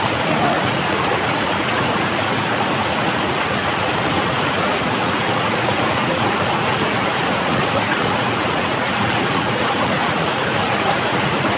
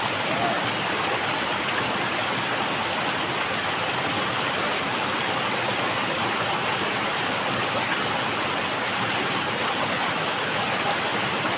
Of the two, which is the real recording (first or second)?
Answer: second